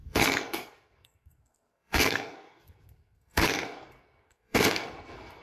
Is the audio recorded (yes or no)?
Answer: no